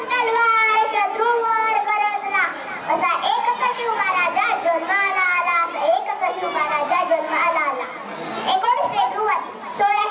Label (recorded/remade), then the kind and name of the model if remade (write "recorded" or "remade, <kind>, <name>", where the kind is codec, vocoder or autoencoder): recorded